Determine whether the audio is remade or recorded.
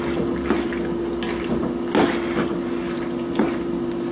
recorded